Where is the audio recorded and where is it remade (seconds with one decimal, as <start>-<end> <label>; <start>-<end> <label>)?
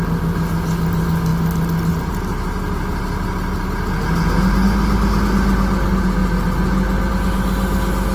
0.0-8.1 recorded